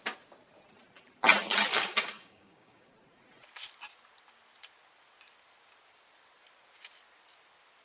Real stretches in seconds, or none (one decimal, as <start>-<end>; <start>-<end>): 0.0-1.7; 2.9-7.8

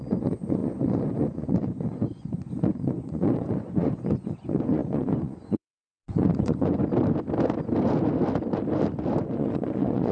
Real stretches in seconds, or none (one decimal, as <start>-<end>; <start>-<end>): 6.8-9.2

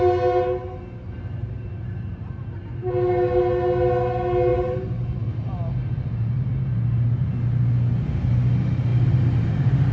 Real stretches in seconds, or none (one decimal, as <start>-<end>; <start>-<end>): 0.0-1.4; 2.9-4.5; 5.2-8.9

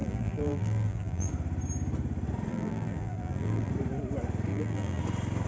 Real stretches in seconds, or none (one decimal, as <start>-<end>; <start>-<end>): 1.3-2.5; 3.7-4.5; 5.0-5.5